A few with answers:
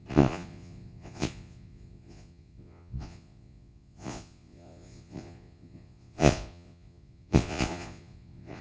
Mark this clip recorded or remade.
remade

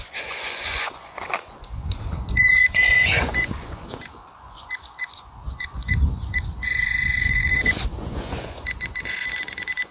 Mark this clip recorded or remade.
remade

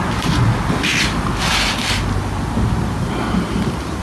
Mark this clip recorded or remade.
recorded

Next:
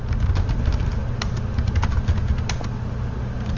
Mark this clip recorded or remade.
recorded